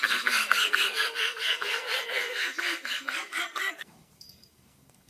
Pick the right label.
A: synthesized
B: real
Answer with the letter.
A